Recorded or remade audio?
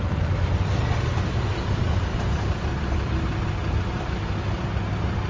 recorded